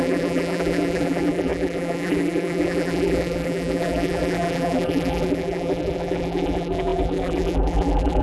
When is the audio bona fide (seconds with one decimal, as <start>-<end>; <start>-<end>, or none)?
none

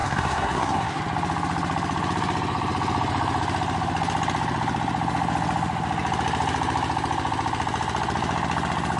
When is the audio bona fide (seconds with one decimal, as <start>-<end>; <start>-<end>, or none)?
1.0-9.0

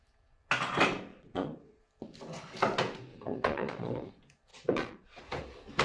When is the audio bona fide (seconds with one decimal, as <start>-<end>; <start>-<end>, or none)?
0.0-1.1; 1.8-3.1; 4.1-4.5; 5.2-5.8

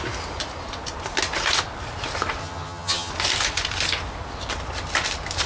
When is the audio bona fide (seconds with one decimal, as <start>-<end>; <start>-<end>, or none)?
0.0-2.4; 3.1-5.5

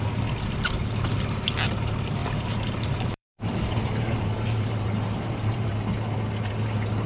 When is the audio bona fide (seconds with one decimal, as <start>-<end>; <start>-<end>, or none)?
0.0-2.2; 5.7-7.1

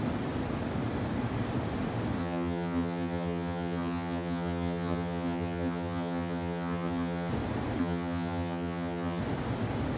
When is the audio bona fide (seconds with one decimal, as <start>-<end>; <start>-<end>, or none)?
0.0-2.2; 7.3-7.8; 9.2-10.0

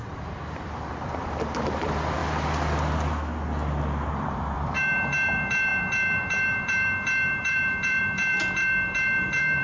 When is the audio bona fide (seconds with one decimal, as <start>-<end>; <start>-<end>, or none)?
2.2-4.1